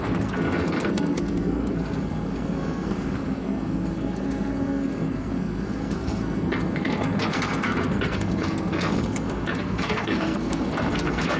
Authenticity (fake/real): fake